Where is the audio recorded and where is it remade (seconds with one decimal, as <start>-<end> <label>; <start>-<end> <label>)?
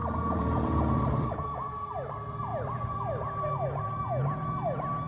0.0-1.7 remade; 1.7-2.5 recorded; 2.5-3.8 remade; 3.8-5.1 recorded